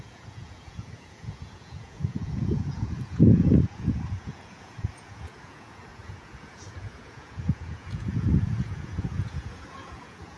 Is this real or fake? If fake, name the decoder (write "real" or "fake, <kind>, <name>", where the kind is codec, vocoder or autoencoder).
fake, vocoder, Vocos